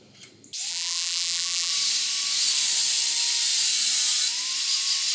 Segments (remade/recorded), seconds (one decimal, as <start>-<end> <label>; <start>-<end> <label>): 0.0-0.7 recorded; 0.7-1.7 remade; 1.7-5.1 recorded